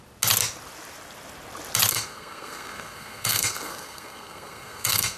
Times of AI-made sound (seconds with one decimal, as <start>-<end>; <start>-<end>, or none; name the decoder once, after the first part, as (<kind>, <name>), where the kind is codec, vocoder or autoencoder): 1.9-5.2 (codec, SNAC)